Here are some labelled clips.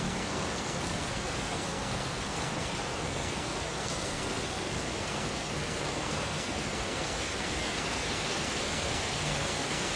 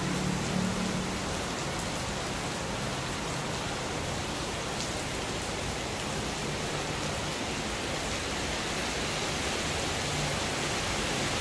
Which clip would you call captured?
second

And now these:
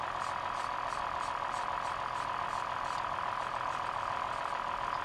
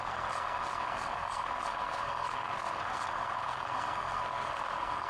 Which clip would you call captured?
first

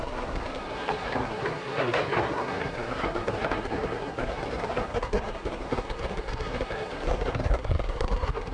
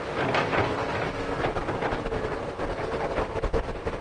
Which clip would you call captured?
second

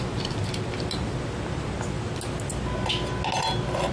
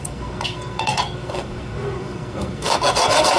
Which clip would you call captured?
first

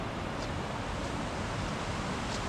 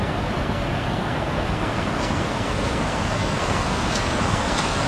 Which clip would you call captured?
first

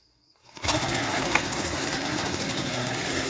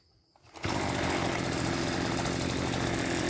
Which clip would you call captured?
second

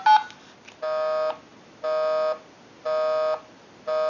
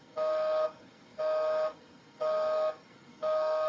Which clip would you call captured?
first